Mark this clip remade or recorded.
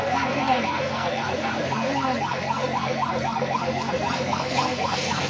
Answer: remade